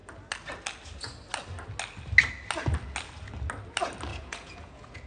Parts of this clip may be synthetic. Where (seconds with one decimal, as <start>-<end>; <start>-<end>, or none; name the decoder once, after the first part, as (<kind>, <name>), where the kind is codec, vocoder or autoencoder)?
4.1-5.1 (vocoder, Vocos)